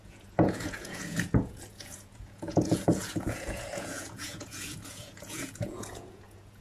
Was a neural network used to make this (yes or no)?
yes